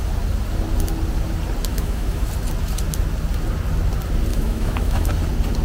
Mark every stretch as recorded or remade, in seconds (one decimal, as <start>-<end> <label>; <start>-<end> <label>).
0.0-1.7 recorded; 1.7-2.3 remade; 2.3-4.3 recorded; 4.3-5.1 remade; 5.1-5.6 recorded